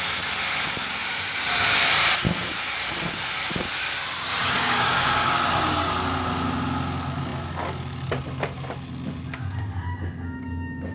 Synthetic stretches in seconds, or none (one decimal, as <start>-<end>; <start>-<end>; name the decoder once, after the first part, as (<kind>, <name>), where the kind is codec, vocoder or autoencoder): 4.4-5.9 (codec, DAC)